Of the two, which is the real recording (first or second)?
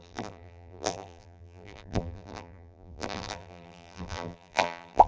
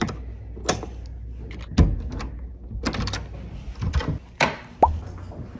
second